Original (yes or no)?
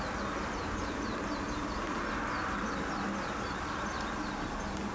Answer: yes